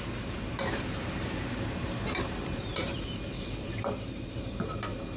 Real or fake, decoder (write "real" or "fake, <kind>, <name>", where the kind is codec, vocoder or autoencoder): fake, vocoder, BigVGAN v2